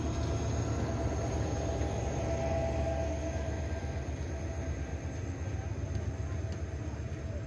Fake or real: real